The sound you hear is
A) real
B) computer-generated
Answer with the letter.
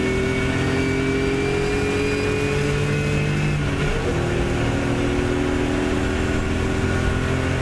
A